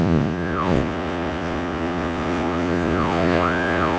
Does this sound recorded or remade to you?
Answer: remade